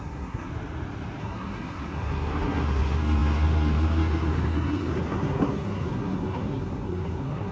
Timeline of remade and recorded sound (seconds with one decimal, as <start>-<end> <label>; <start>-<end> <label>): 0.0-0.5 remade; 0.5-1.2 recorded; 1.2-7.5 remade